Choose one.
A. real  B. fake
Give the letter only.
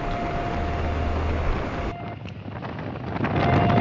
A